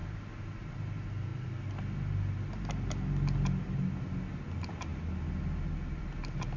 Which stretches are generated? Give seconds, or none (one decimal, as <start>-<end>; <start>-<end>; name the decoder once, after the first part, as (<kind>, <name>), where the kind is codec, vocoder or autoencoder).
none